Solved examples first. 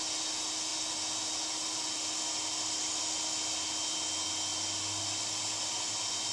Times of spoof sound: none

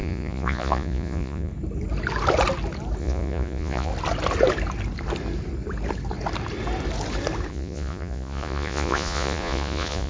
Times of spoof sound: 0.0-1.5 (vocoder, Vocos); 3.0-3.9; 7.5-10.1